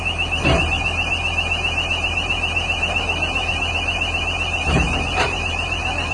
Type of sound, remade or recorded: recorded